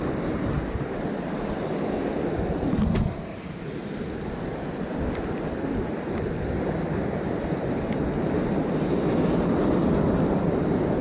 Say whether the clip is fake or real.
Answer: real